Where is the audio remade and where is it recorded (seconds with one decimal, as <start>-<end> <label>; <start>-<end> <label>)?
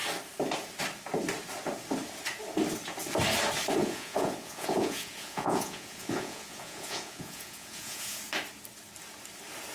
0.0-3.8 recorded; 3.8-8.2 remade; 8.2-9.7 recorded